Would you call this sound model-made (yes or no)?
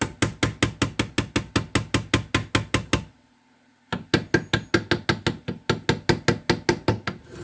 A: no